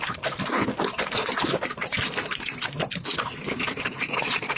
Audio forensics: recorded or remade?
remade